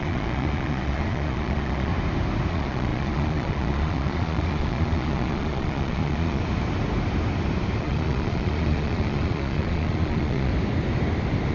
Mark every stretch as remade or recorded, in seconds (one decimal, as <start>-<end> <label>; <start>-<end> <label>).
0.0-1.9 remade; 1.9-2.5 recorded; 2.5-6.4 remade; 6.4-7.8 recorded; 7.8-10.5 remade; 10.5-11.5 recorded